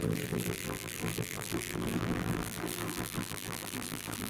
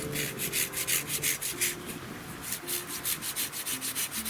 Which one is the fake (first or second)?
first